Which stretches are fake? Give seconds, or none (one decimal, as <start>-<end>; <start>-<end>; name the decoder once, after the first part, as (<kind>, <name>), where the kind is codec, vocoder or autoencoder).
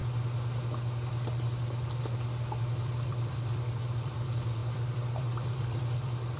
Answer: 2.6-6.4 (vocoder, BigVGAN v2)